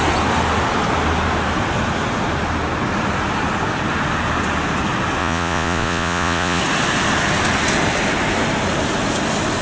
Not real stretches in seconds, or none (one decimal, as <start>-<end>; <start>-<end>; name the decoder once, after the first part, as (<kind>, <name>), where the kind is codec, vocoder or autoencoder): 5.2-6.6 (vocoder, Vocos)